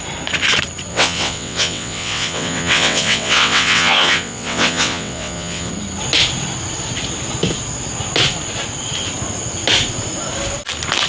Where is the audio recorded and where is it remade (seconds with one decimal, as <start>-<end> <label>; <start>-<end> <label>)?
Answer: 0.0-0.9 recorded; 0.9-5.7 remade; 5.7-11.1 recorded